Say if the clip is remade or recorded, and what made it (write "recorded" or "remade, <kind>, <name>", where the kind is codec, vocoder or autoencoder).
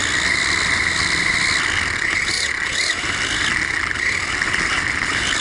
recorded